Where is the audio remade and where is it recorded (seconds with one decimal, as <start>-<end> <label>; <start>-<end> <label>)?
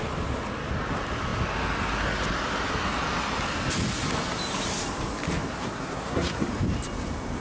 0.0-5.5 recorded; 5.5-6.5 remade; 6.5-7.4 recorded